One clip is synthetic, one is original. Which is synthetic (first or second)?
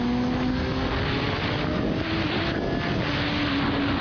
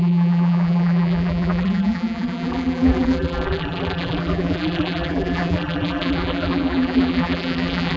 second